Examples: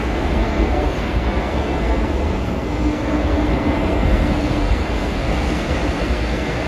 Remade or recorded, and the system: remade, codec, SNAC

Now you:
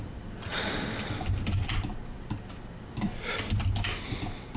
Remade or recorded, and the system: remade, vocoder, BigVGAN v2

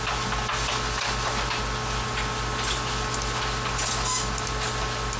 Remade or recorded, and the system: recorded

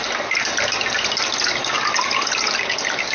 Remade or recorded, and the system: recorded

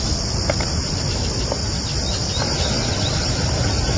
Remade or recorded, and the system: recorded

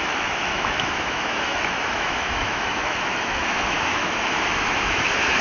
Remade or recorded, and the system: remade, autoencoder, DAC-VAE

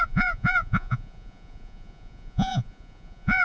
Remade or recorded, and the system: remade, vocoder, Vocos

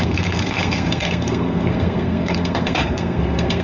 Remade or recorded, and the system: remade, codec, SNAC